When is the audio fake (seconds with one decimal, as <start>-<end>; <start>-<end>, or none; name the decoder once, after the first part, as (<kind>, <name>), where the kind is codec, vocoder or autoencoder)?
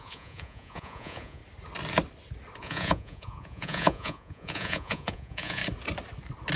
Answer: 0.0-1.4 (vocoder, Vocos); 2.6-5.6